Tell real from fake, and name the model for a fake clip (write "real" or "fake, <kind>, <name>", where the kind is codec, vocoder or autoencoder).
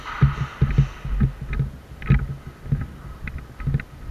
real